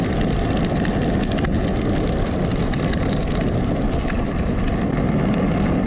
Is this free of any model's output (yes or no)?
yes